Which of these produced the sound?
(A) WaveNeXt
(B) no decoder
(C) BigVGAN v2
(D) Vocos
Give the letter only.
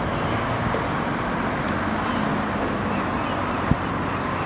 B